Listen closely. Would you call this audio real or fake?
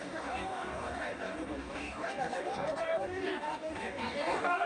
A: fake